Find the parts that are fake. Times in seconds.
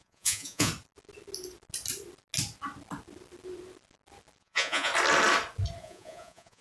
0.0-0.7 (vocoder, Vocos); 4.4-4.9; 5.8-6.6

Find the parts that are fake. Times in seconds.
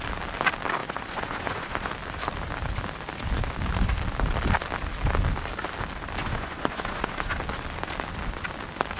0.8-1.9 (vocoder, Vocos); 6.2-7.4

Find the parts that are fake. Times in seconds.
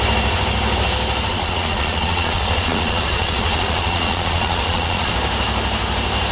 1.3-5.1 (vocoder, Vocos)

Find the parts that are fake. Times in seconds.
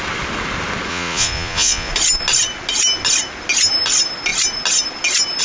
0.9-1.9 (vocoder, Vocos)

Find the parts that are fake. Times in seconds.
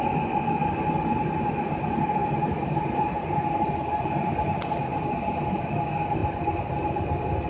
none